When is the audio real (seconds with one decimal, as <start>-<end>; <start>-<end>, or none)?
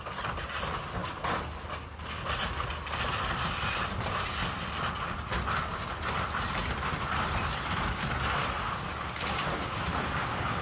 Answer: 0.0-8.9; 10.0-10.6